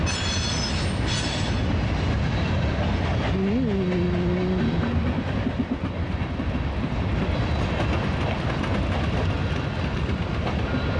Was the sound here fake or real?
real